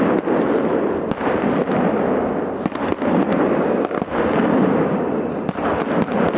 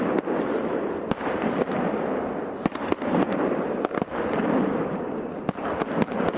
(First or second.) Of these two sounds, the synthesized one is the second